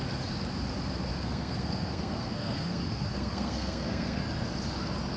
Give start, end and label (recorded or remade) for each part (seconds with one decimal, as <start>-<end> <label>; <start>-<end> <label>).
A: 0.0-1.1 recorded; 1.1-4.2 remade; 4.2-5.2 recorded